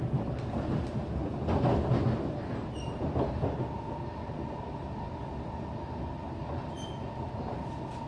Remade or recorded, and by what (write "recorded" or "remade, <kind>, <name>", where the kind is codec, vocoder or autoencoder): recorded